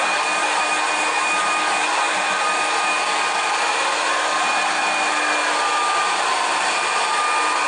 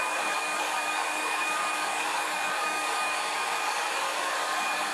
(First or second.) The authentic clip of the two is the first